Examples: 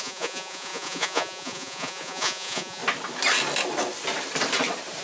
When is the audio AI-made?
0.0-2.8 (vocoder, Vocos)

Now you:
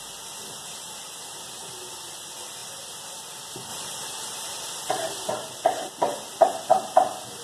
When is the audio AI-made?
3.7-5.3 (vocoder, BigVGAN v2)

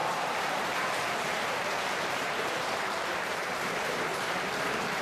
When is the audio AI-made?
0.0-4.1 (vocoder, BigVGAN v2)

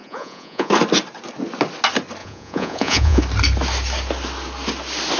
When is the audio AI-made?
0.0-0.7 (vocoder, Vocos); 2.2-3.2

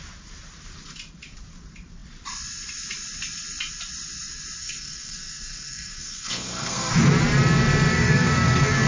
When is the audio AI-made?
4.6-6.9 (codec, SNAC); 7.9-8.9

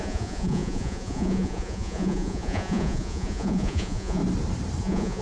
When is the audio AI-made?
0.0-4.2 (vocoder, Vocos); 4.8-5.2